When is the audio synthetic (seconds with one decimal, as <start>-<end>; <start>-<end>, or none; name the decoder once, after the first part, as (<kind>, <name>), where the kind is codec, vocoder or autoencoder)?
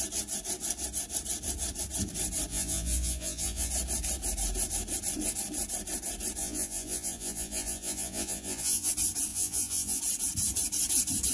2.5-3.7 (vocoder, Vocos); 6.4-8.9; 9.3-10.0